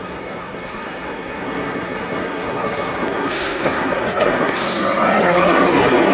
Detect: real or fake fake